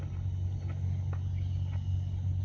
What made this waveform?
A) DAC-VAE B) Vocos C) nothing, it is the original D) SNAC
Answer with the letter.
C